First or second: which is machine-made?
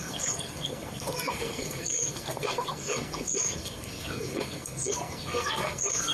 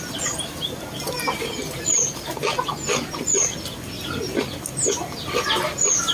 first